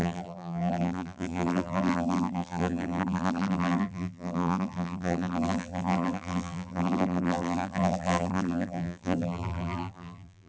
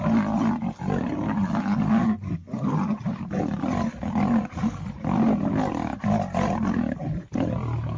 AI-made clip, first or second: first